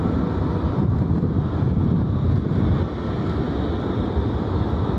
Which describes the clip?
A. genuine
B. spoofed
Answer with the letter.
A